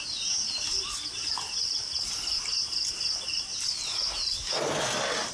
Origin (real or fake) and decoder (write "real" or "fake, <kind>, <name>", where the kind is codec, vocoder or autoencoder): real